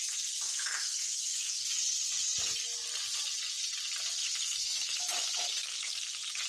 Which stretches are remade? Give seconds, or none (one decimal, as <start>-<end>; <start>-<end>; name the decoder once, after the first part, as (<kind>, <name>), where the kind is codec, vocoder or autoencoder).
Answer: 0.5-1.8 (autoencoder, DAC-VAE); 4.2-5.9